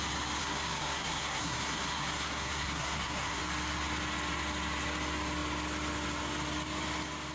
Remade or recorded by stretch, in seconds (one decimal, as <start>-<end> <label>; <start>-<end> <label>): 0.0-0.4 recorded; 0.4-3.4 remade; 3.4-7.3 recorded